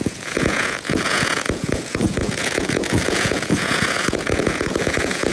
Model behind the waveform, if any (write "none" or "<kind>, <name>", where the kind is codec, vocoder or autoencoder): vocoder, Vocos